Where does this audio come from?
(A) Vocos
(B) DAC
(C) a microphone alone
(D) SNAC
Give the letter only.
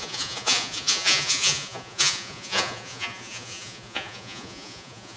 A